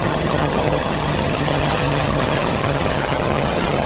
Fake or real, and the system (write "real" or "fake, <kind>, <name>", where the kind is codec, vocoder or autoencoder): fake, vocoder, HiFi-GAN